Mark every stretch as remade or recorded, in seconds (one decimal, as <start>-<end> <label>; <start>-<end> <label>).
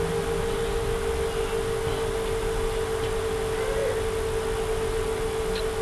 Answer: 0.0-5.8 recorded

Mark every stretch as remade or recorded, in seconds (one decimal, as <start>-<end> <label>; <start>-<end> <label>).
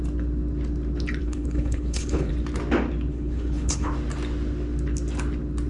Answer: 0.0-1.2 recorded; 1.2-2.3 remade; 2.3-3.1 recorded; 3.1-3.9 remade; 3.9-5.7 recorded